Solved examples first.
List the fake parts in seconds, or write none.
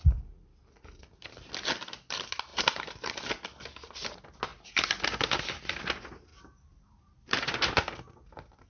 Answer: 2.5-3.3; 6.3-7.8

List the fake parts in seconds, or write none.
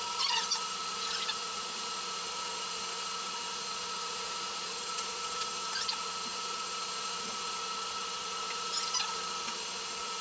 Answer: 0.0-10.2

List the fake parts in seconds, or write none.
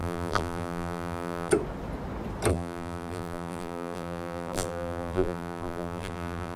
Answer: 0.0-1.5; 2.5-6.6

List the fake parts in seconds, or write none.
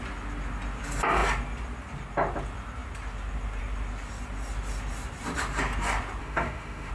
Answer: 6.2-6.9